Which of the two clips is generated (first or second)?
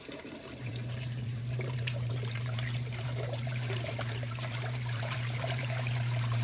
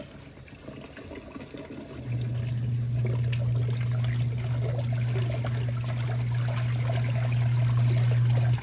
first